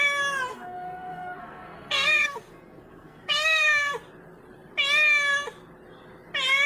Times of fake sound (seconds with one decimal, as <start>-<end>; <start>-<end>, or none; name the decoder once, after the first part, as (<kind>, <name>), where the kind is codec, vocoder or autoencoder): 0.5-3.9 (codec, SNAC)